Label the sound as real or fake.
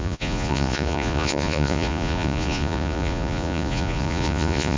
fake